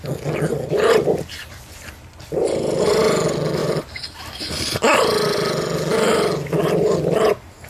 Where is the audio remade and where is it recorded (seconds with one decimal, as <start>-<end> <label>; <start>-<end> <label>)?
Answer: 0.0-3.6 recorded; 3.6-4.7 remade; 4.7-7.7 recorded